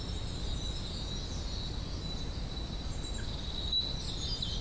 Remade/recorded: recorded